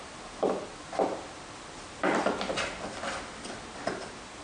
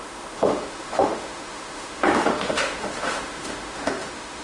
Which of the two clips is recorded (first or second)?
first